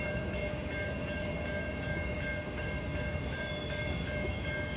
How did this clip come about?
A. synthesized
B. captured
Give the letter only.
A